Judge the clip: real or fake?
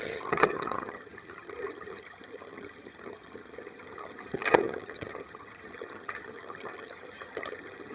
fake